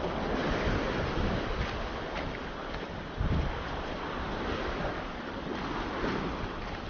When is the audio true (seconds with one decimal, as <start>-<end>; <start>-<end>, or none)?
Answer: 0.0-6.9